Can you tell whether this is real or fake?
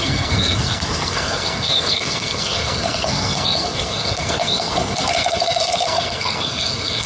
fake